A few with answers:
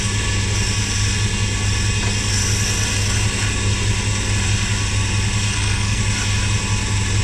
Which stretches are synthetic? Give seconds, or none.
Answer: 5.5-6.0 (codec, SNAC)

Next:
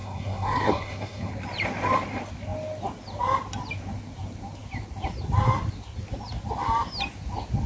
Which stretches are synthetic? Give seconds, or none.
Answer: 0.0-1.3 (codec, SNAC)